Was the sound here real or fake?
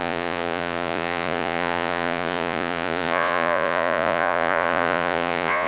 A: fake